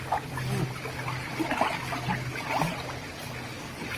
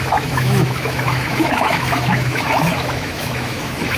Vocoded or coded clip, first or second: second